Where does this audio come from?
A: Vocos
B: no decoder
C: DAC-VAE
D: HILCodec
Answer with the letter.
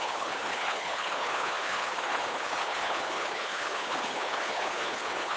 D